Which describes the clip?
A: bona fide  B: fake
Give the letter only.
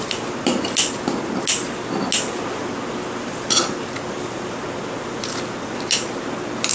A